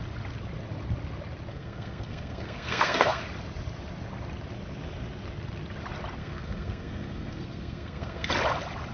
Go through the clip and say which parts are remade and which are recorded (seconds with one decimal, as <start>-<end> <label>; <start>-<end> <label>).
0.0-1.5 recorded; 1.5-3.2 remade; 3.2-6.2 recorded; 6.2-8.3 remade; 8.3-8.9 recorded